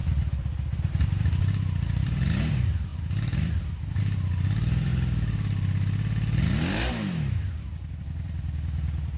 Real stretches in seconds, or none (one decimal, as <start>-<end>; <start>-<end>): 4.9-8.0